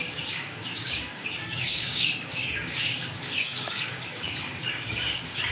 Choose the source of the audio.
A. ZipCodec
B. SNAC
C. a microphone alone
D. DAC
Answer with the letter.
D